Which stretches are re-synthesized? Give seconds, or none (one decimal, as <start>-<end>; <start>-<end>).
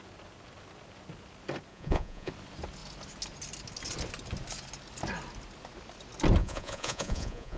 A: 1.7-2.3; 6.4-7.6